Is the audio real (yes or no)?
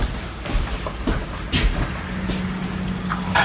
yes